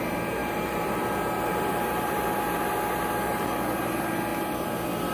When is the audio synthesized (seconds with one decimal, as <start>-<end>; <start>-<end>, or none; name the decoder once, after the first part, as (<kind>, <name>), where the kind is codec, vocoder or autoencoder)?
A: 0.4-2.1 (vocoder, BigVGAN v2)